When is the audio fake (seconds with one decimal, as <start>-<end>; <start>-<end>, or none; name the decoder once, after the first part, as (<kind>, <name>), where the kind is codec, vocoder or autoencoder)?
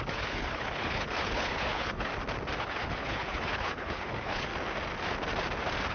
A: 0.0-2.1 (codec, HILCodec); 2.6-4.5